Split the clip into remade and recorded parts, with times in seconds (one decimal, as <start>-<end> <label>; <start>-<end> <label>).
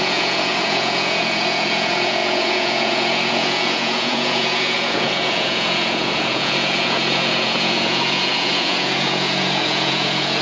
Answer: 0.0-10.4 remade